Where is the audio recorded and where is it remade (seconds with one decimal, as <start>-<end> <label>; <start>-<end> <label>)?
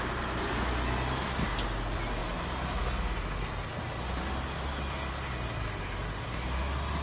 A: 0.0-7.0 recorded